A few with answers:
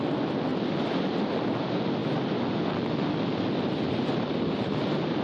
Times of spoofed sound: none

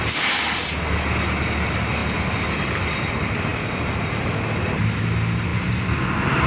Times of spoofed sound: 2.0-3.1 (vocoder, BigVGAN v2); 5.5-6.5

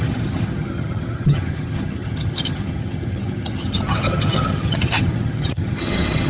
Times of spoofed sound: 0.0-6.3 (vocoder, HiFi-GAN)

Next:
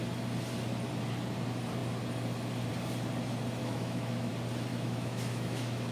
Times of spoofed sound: 3.6-4.3 (autoencoder, DAC-VAE); 4.7-5.9

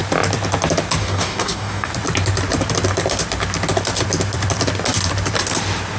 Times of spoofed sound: 1.0-1.9 (codec, DAC)

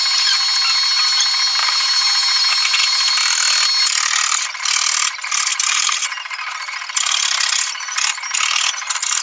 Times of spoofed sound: 1.6-3.1 (vocoder, BigVGAN v2); 5.5-6.1

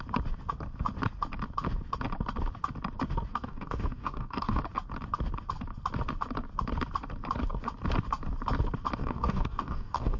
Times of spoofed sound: 3.3-4.6 (codec, DAC); 9.0-10.2

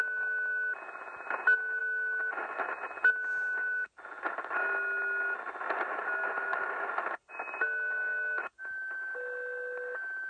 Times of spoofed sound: none